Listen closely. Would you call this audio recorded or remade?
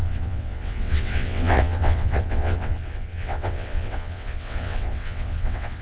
remade